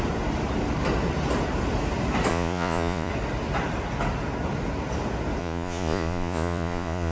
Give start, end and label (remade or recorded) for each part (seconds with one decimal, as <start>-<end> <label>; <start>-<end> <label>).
0.0-2.3 recorded; 2.3-3.1 remade; 3.1-5.4 recorded; 5.4-7.1 remade